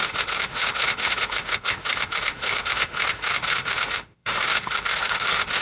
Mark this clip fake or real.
fake